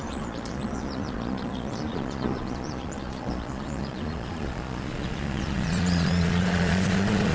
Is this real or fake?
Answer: fake